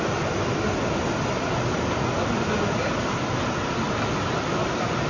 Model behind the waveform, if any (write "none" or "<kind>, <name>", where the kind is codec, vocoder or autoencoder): none